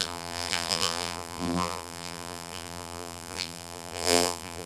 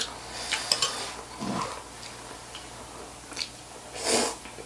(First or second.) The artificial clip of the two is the first